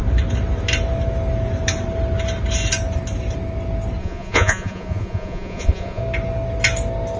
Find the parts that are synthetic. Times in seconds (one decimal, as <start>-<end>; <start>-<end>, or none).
4.0-6.0